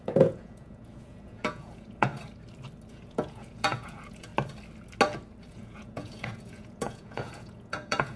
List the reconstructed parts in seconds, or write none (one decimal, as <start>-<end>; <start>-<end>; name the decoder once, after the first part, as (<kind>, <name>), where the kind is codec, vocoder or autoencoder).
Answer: 0.0-2.1 (vocoder, Vocos); 2.9-4.3; 5.5-8.2